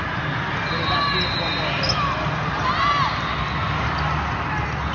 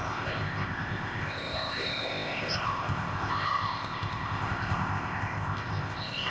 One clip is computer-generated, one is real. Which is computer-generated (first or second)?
second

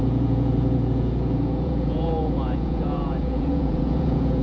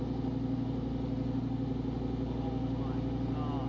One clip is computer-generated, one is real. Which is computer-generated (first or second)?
first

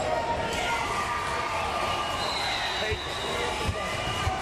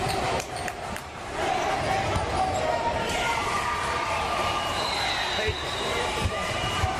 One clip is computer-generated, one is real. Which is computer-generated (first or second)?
second